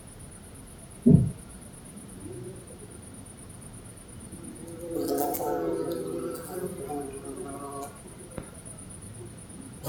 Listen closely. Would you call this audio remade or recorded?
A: recorded